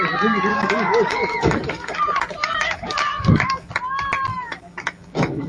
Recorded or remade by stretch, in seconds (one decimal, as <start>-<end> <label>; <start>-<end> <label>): 0.0-0.5 recorded; 0.5-2.0 remade; 2.0-2.4 recorded; 2.4-3.7 remade; 3.7-4.3 recorded; 4.3-5.5 remade